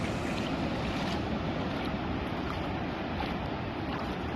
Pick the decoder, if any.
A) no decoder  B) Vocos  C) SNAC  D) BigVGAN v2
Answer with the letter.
A